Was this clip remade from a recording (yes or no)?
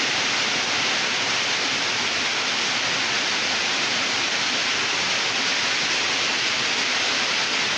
no